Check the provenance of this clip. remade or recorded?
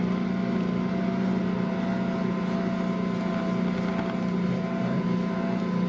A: recorded